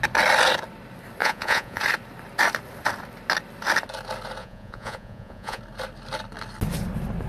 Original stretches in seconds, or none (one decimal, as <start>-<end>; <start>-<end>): 0.0-1.2; 1.8-4.4; 5.6-7.3